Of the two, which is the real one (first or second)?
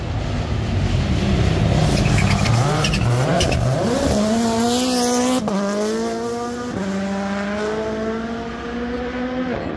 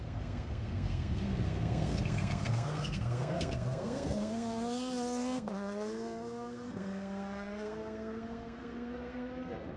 first